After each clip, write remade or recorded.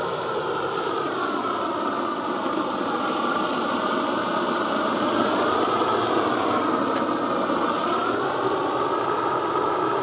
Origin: recorded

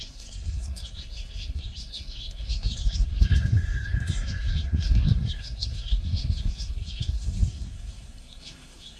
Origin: remade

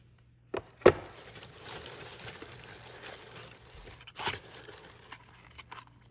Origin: recorded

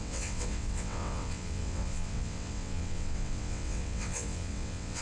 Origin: remade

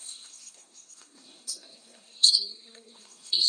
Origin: remade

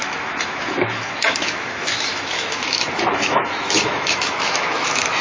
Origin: remade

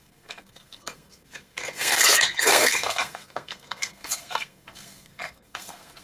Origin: remade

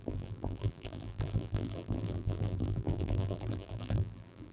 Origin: remade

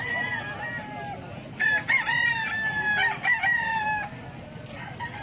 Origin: recorded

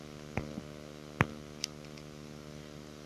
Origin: recorded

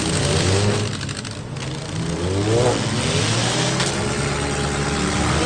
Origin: recorded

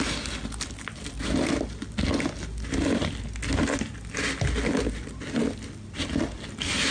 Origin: recorded